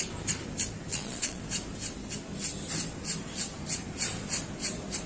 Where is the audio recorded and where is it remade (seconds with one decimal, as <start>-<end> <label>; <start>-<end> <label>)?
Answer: 0.0-0.9 recorded; 0.9-1.4 remade; 1.4-5.1 recorded